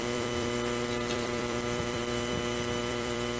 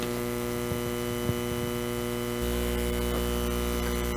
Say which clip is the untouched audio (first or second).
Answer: second